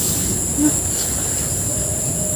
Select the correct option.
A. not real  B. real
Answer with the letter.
A